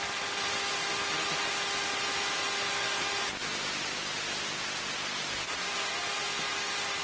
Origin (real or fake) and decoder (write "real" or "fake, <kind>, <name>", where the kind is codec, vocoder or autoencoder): real